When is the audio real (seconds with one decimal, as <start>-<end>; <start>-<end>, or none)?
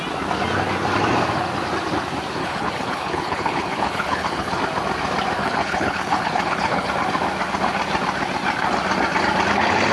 0.0-2.4; 4.6-5.4; 6.9-9.9